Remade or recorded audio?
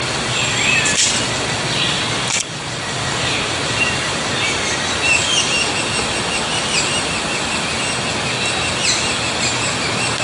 recorded